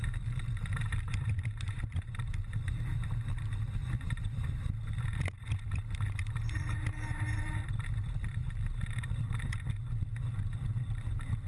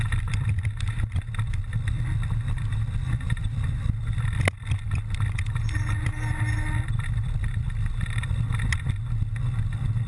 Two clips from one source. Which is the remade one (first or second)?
first